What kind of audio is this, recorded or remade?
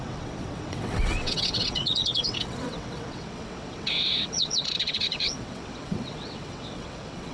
remade